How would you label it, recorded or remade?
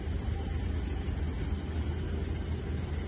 recorded